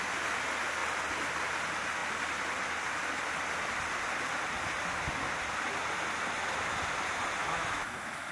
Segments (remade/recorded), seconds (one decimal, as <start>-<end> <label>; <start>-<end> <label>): 0.0-7.4 recorded; 7.4-8.3 remade